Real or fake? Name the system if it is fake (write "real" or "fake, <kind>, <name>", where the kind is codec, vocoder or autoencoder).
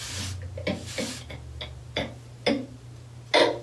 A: real